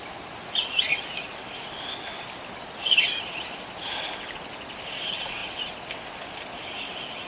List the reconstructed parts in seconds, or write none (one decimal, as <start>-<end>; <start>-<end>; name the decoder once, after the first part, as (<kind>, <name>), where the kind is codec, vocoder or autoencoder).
none

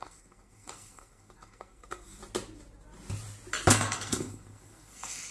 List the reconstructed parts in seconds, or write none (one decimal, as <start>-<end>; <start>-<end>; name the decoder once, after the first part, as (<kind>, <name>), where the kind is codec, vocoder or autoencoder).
0.0-2.2 (codec, SNAC); 3.7-5.3

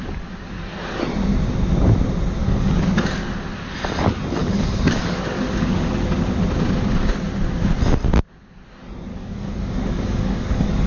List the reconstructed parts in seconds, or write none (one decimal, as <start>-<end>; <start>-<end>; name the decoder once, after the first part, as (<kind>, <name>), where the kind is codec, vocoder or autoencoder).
2.4-3.2 (codec, DAC); 4.4-5.9; 9.1-10.9

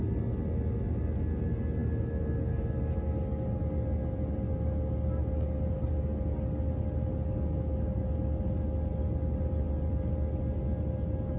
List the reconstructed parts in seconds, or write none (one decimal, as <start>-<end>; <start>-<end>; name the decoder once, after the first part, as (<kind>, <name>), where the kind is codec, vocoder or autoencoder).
none